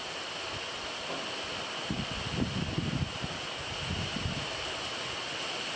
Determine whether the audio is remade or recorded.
recorded